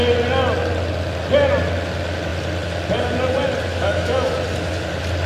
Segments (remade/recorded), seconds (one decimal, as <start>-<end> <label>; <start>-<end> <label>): 0.0-3.7 recorded; 3.7-4.3 remade; 4.3-5.3 recorded